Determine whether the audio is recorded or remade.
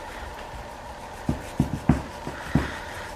recorded